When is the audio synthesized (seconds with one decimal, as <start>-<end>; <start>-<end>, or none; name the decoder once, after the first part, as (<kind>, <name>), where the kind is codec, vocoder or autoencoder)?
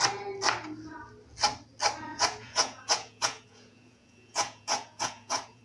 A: 2.1-5.6 (vocoder, Vocos)